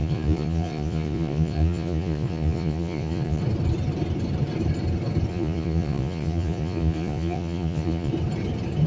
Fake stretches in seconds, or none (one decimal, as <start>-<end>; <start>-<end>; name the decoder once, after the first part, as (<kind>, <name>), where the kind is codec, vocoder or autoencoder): 0.0-3.4 (vocoder, Vocos); 5.3-8.1